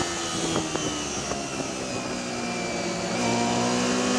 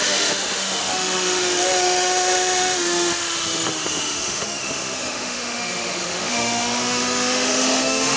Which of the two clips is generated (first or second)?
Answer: second